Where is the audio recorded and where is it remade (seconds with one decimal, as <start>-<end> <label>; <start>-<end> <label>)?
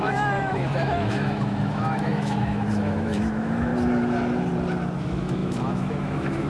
0.0-3.7 remade; 3.7-5.0 recorded; 5.0-6.5 remade